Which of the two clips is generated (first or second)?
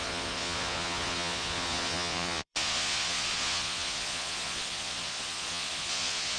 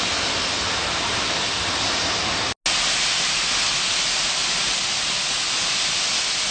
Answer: first